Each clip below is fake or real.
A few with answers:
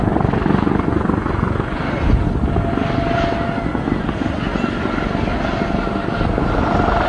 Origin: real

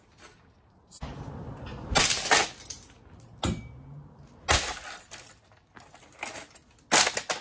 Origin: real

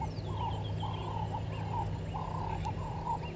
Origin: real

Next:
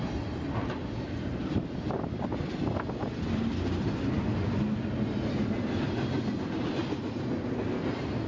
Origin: real